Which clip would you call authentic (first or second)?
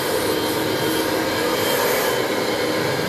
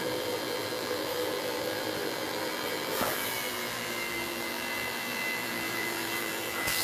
first